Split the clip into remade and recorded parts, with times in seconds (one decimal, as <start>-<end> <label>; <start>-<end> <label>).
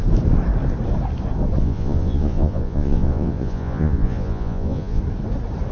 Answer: 0.0-1.6 recorded; 1.6-5.0 remade; 5.0-5.7 recorded